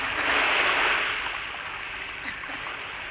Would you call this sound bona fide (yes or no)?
yes